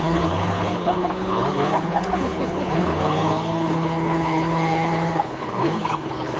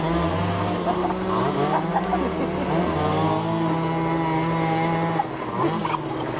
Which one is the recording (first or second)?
second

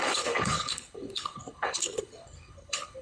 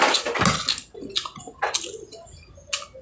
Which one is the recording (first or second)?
second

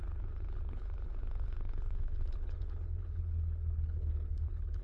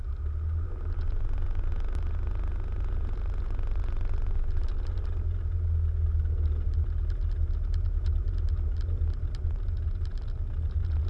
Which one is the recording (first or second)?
second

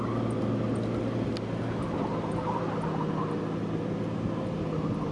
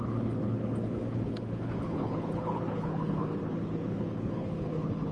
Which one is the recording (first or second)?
first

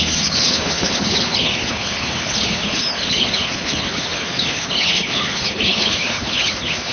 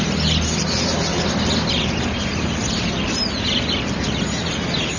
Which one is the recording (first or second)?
second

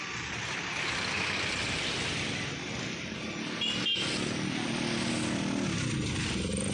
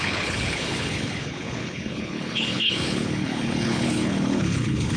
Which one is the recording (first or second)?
first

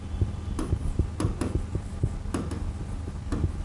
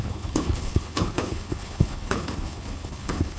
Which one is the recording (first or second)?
first